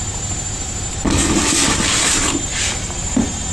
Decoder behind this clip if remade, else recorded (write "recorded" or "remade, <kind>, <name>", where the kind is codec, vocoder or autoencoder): recorded